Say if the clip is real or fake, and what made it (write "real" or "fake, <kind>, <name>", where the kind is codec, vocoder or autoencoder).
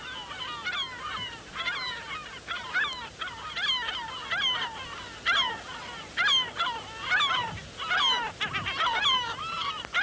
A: real